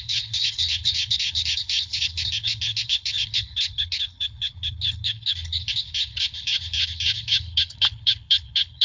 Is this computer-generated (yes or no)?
yes